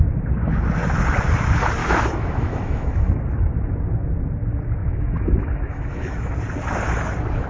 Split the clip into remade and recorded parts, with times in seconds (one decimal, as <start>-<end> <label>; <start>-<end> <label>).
0.0-1.8 recorded; 1.8-3.1 remade; 3.1-4.8 recorded; 4.8-6.3 remade; 6.3-7.5 recorded